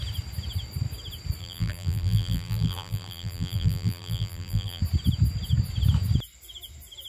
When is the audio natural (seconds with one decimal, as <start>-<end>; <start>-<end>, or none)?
0.0-1.4; 4.8-7.1